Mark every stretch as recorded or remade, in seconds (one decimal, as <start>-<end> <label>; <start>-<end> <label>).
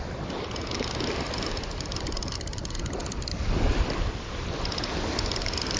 0.0-5.8 recorded